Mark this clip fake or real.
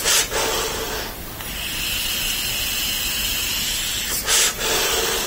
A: real